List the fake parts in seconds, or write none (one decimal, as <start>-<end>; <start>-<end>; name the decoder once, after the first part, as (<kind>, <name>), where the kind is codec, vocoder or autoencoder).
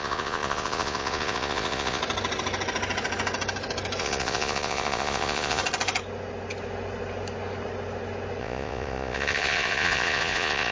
0.0-2.0 (vocoder, Vocos); 4.0-5.6; 8.4-10.7